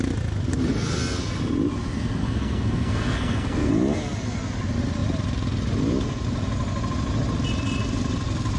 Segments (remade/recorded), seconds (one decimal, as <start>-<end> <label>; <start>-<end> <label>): 0.0-2.2 recorded; 2.2-3.7 remade; 3.7-8.6 recorded